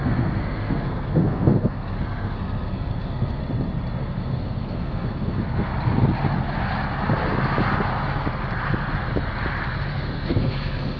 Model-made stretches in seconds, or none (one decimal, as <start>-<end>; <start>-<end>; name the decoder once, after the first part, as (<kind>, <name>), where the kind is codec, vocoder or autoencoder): 0.0-3.4 (codec, SNAC); 4.0-5.7; 9.9-11.0